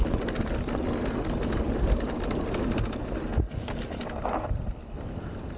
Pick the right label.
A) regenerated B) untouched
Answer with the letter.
B